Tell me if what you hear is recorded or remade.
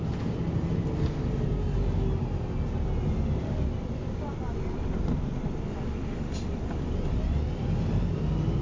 recorded